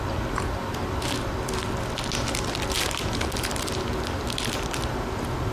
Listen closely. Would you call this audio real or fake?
real